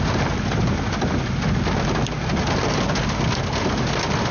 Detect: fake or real real